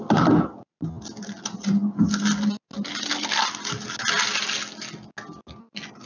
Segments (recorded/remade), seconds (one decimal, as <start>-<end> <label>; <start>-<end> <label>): 0.0-6.1 recorded